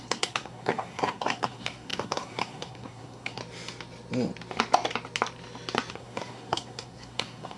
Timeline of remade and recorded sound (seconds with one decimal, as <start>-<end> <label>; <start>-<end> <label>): 0.0-3.4 remade; 3.4-5.9 recorded; 5.9-7.6 remade